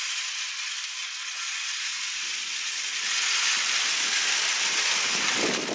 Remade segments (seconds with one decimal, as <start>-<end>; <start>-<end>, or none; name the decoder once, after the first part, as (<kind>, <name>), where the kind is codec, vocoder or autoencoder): none